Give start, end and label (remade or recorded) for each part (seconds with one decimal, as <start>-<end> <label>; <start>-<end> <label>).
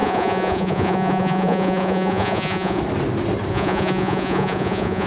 0.0-2.8 remade; 2.8-3.5 recorded; 3.5-5.1 remade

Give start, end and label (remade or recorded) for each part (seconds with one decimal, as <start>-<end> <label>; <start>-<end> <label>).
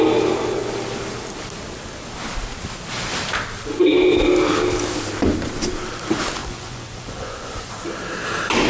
0.0-6.4 recorded; 6.4-7.7 remade; 7.7-8.7 recorded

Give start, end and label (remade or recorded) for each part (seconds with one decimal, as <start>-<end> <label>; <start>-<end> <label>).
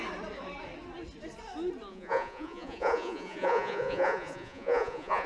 0.0-1.9 recorded; 1.9-5.3 remade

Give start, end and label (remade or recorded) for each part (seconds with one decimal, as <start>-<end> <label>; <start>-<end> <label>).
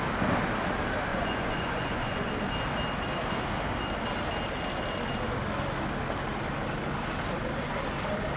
0.0-1.1 recorded; 1.1-2.3 remade; 2.3-8.4 recorded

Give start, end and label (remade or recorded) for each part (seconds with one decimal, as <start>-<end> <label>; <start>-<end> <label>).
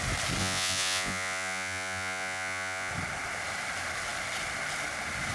0.0-0.4 recorded; 0.4-2.9 remade; 2.9-5.3 recorded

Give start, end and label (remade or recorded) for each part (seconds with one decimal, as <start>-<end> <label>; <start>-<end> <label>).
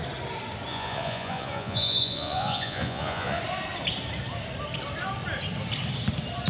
0.0-0.7 recorded; 0.7-3.4 remade; 3.4-6.5 recorded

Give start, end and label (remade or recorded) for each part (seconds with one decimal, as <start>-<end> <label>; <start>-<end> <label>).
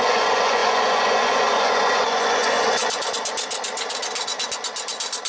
0.0-2.8 remade; 2.8-5.3 recorded